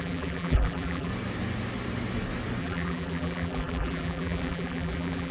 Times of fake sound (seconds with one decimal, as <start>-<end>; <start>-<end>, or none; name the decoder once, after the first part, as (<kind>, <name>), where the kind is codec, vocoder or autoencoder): 0.0-1.1 (vocoder, BigVGAN v2); 2.6-5.3